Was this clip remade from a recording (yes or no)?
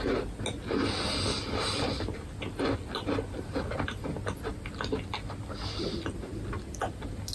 no